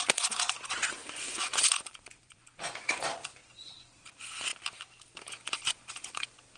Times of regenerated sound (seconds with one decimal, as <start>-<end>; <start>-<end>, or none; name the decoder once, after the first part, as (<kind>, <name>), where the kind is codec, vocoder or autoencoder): 0.0-4.5 (vocoder, Vocos); 5.3-6.6